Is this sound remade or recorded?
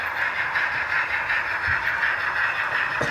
recorded